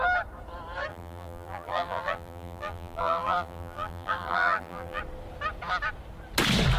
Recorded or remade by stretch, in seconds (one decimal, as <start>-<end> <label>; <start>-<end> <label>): 0.0-0.9 recorded; 0.9-5.0 remade; 5.0-6.8 recorded